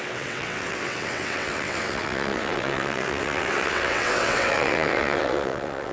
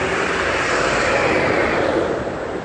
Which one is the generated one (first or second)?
first